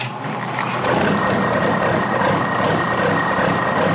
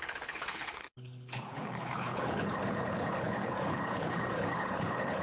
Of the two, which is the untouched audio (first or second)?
first